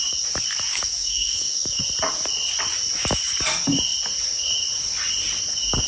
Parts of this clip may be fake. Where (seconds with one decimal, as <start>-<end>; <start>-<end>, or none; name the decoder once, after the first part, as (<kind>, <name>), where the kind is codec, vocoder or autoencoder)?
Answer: 0.7-1.8 (autoencoder, DAC-VAE)